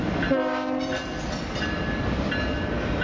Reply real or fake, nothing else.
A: real